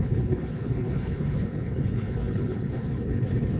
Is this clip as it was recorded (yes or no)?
no